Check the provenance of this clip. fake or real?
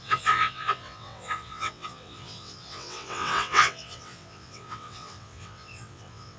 fake